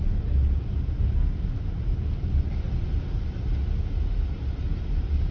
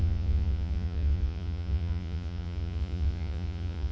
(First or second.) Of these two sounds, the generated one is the second